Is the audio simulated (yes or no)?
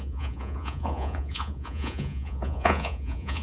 yes